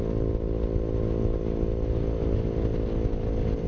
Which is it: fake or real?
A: real